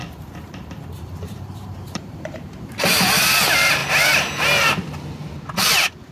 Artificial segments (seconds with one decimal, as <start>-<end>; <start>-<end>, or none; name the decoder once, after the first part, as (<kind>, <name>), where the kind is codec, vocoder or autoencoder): 0.0-3.1 (vocoder, BigVGAN v2)